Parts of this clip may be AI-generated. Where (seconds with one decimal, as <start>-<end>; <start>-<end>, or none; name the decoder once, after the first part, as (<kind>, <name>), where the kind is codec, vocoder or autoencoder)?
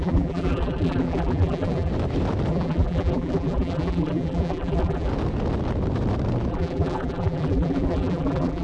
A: 0.0-1.9 (vocoder, BigVGAN v2); 2.5-5.1; 6.5-8.6